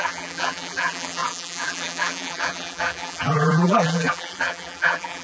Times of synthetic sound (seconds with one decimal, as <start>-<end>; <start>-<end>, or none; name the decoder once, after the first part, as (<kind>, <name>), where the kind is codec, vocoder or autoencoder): 0.0-5.2 (vocoder, BigVGAN v2)